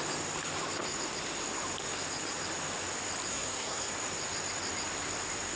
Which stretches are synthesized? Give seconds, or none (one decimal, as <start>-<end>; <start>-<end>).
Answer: 3.3-3.9